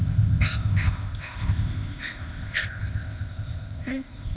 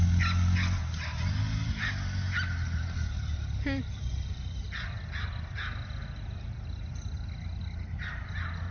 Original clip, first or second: second